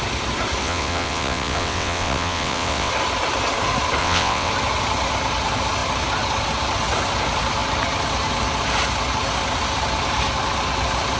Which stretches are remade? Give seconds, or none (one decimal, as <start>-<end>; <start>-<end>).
0.6-2.9; 4.0-4.5